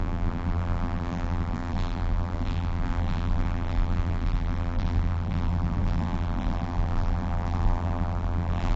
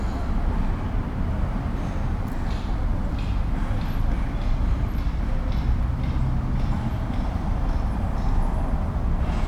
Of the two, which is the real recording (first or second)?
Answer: second